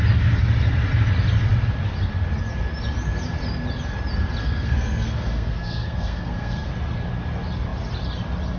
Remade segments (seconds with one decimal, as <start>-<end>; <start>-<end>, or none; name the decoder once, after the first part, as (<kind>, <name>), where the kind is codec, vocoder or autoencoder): 4.4-6.7 (codec, SNAC)